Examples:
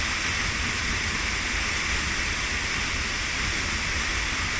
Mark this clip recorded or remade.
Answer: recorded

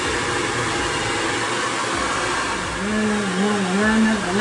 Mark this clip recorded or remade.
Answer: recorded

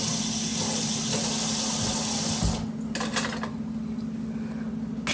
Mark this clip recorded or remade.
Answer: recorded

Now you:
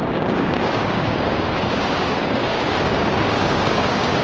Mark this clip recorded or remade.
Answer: remade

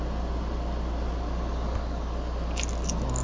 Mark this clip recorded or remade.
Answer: recorded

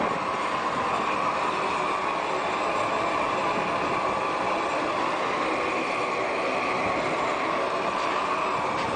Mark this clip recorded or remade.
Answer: recorded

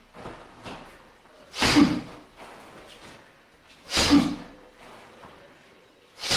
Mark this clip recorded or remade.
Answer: recorded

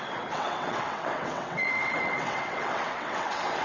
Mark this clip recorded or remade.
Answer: remade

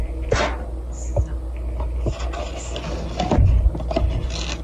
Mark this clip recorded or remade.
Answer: recorded